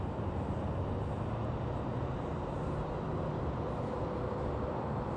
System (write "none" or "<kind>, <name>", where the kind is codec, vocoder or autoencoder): none